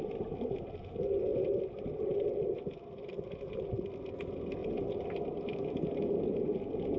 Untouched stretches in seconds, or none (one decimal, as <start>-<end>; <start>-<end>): 0.0-7.0